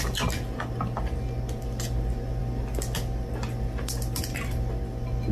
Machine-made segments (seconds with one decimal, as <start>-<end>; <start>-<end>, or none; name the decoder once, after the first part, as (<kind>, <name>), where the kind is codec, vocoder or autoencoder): none